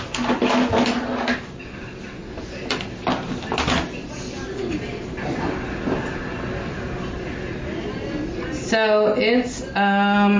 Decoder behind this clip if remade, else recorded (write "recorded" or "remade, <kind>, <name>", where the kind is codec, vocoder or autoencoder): recorded